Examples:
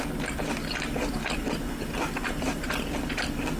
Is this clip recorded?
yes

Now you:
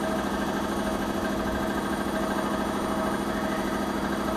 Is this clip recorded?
yes